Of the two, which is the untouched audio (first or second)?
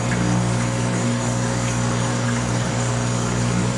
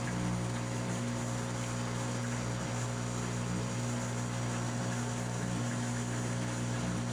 second